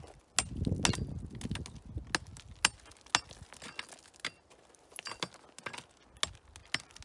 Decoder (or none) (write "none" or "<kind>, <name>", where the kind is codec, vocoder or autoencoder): none